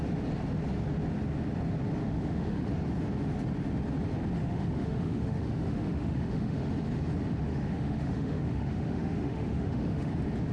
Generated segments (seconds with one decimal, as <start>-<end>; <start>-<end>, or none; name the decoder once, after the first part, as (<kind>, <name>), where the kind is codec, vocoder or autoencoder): 2.0-2.7 (autoencoder, DAC-VAE); 4.4-6.7; 7.5-10.1